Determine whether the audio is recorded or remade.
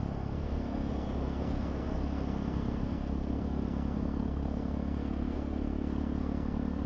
remade